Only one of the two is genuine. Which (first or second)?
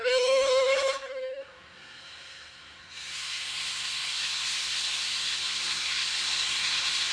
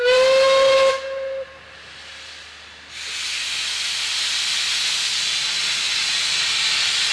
second